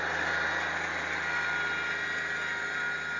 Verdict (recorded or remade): recorded